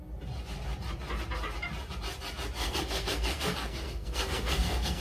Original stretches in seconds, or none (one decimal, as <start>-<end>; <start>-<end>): 0.0-2.6